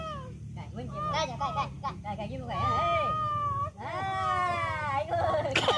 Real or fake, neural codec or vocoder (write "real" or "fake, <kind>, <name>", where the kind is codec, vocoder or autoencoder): real